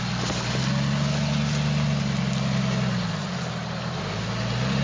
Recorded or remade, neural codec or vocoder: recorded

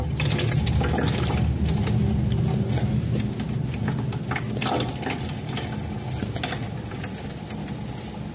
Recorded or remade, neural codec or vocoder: recorded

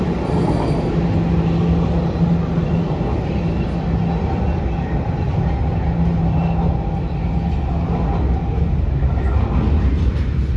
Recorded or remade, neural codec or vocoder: recorded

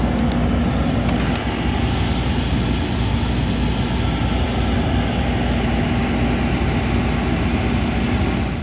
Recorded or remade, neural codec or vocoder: recorded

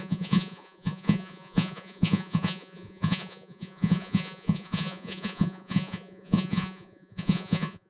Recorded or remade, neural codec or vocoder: remade, vocoder, Vocos